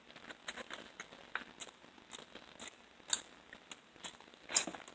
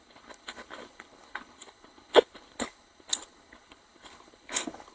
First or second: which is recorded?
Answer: first